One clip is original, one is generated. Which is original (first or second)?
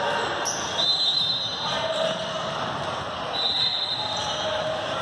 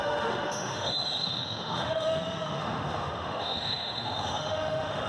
first